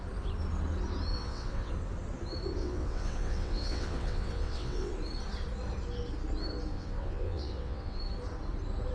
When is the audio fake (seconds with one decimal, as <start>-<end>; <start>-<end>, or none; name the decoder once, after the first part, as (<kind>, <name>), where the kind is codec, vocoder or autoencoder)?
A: 1.1-1.7 (vocoder, WaveNeXt); 2.6-4.9; 6.7-8.0